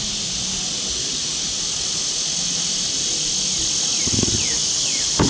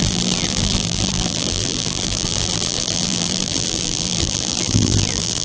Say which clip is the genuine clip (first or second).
first